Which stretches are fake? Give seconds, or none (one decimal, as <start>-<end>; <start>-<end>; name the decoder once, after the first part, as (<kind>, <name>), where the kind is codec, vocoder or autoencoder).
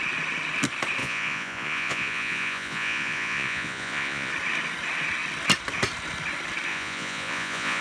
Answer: 1.0-4.3 (vocoder, Vocos); 6.7-7.8